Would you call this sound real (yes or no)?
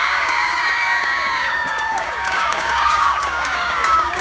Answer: no